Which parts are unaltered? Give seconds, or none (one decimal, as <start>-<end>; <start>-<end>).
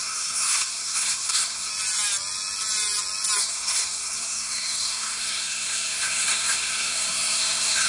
1.7-3.4